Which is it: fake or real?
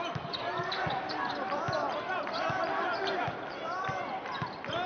real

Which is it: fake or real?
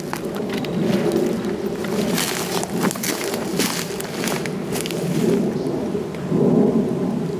real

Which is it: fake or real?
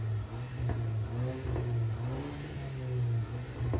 real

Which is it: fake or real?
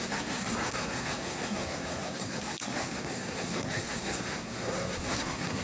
fake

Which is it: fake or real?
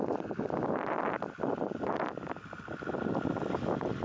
real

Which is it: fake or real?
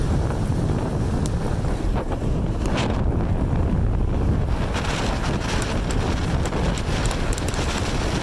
real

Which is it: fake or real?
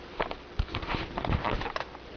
real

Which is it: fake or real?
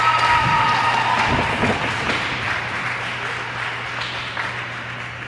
real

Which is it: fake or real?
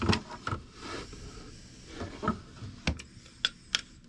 real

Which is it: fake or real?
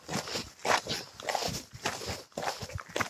real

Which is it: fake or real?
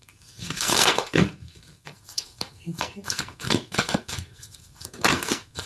fake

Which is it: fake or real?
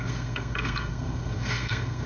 fake